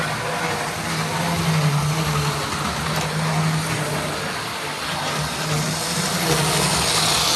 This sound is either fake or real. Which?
real